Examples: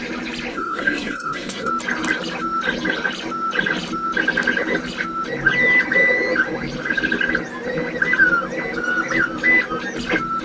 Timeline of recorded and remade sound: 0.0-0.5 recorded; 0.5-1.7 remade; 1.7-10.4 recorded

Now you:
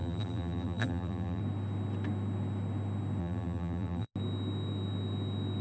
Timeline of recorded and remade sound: 0.0-1.4 remade; 1.4-3.2 recorded; 3.2-4.1 remade; 4.1-5.6 recorded

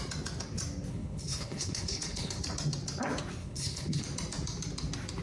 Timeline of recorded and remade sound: 0.0-0.9 recorded; 0.9-2.4 remade; 2.4-3.4 recorded; 3.4-4.0 remade; 4.0-5.2 recorded

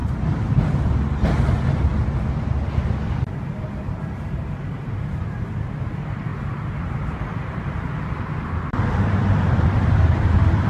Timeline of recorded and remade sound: 0.0-10.7 recorded

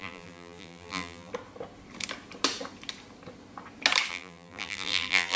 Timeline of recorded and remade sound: 0.0-1.3 remade; 1.3-4.1 recorded; 4.1-5.4 remade

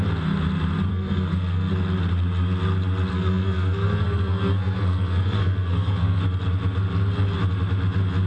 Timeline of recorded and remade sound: 0.0-0.9 recorded; 0.9-1.7 remade; 1.7-3.1 recorded; 3.1-6.2 remade; 6.2-8.3 recorded